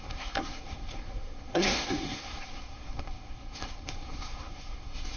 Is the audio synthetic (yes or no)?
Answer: yes